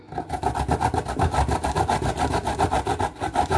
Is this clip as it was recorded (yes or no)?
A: no